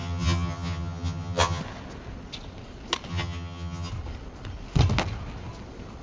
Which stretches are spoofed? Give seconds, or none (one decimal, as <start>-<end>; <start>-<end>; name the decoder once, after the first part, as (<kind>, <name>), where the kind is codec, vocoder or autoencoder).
0.0-1.6 (vocoder, HiFi-GAN); 3.1-3.9